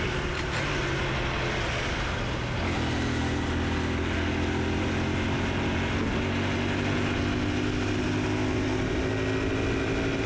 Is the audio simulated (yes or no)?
no